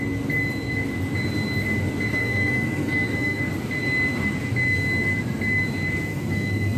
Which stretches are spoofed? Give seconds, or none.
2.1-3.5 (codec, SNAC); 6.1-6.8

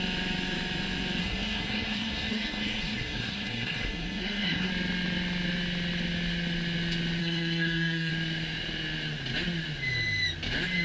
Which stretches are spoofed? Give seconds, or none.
1.2-4.7 (codec, SNAC); 7.2-8.1